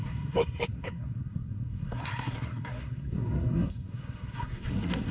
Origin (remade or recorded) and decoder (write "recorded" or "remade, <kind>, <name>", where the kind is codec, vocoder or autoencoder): remade, codec, SNAC